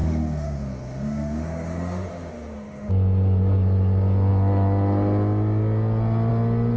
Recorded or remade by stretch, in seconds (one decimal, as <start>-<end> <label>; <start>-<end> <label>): 0.0-2.9 remade; 2.9-6.8 recorded